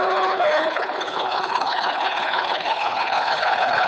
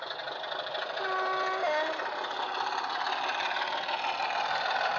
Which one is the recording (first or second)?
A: second